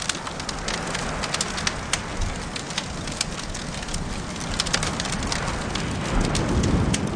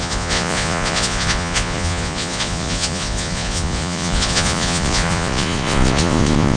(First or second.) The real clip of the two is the first